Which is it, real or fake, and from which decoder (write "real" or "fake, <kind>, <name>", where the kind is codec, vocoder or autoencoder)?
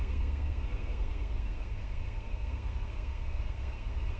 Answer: fake, codec, SNAC